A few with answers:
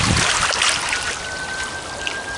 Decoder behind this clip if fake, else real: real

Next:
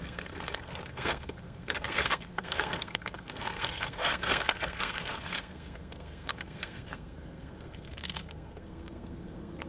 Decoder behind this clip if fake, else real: fake, codec, SNAC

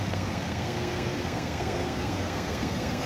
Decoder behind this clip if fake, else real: fake, codec, SNAC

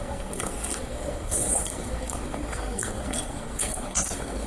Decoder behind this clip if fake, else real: fake, codec, SNAC